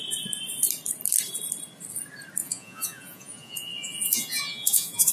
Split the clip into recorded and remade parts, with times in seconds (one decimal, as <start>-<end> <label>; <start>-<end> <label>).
0.0-2.4 recorded; 2.4-5.1 remade